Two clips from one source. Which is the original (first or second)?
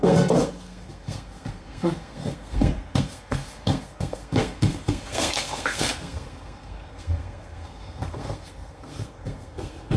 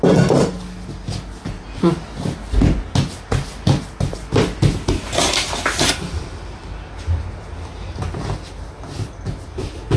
second